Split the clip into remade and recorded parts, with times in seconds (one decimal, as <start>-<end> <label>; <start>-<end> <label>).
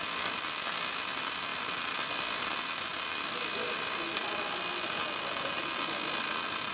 0.0-6.7 recorded